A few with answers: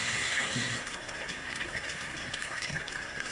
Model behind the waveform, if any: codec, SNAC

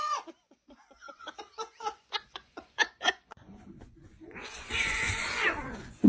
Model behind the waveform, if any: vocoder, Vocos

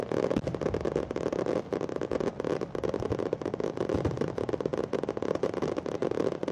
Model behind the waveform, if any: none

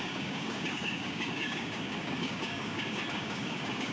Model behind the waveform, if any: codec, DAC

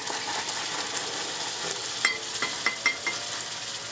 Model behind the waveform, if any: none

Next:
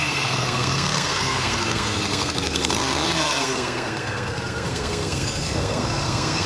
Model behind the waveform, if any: codec, SNAC